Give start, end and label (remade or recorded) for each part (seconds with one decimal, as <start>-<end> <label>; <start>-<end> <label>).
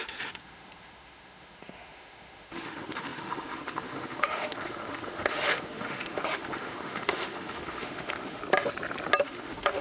0.0-8.4 remade; 8.4-9.2 recorded; 9.2-9.8 remade